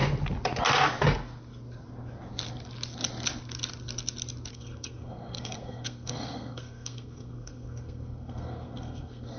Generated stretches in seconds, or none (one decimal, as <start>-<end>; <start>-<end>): 4.5-9.4